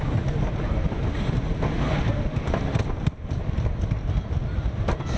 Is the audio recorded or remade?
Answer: recorded